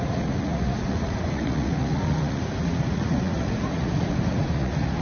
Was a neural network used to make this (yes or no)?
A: yes